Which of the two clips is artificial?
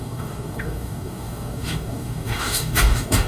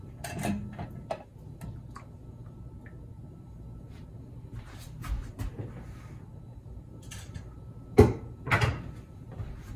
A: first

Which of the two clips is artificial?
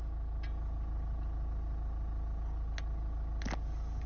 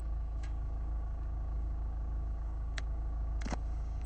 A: second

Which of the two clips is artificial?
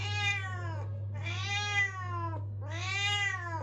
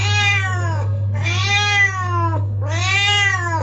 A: second